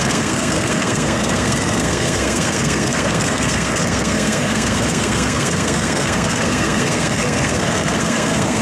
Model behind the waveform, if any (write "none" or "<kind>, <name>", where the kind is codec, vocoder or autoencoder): codec, SNAC